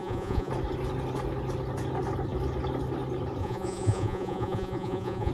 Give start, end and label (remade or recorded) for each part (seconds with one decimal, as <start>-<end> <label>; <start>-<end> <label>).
0.0-0.5 remade; 0.5-3.4 recorded; 3.4-5.3 remade